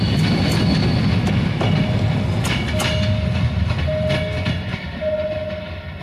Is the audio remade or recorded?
recorded